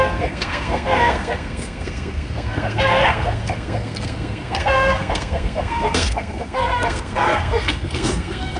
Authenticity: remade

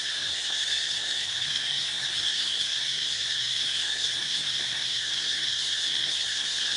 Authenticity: remade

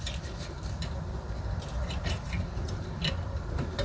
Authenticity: recorded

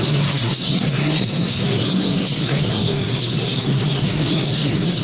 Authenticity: remade